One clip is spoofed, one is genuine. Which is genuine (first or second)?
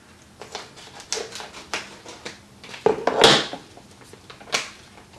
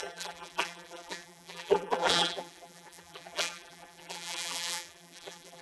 first